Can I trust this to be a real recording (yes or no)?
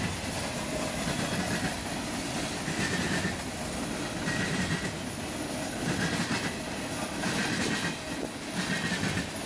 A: yes